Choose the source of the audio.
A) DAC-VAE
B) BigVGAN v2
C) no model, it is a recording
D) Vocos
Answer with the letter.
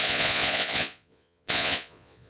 D